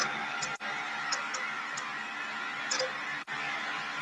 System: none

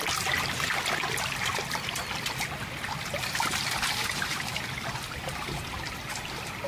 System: none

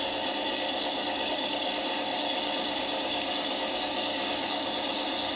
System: codec, DAC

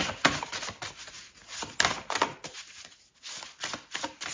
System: none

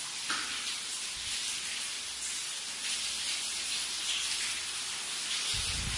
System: none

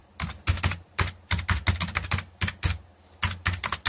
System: none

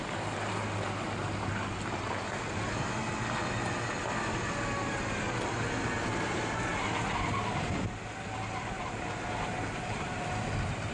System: none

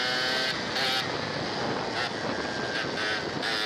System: none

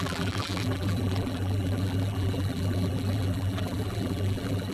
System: vocoder, BigVGAN v2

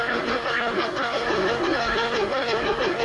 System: codec, SNAC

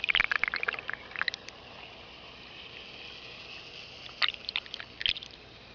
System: none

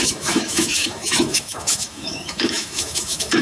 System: autoencoder, DAC-VAE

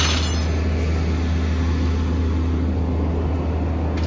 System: none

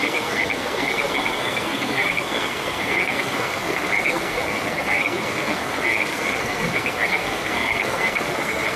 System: codec, SNAC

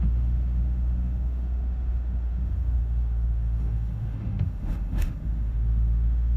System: autoencoder, DAC-VAE